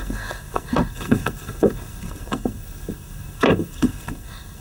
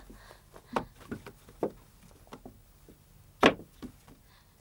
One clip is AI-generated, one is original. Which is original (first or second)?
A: second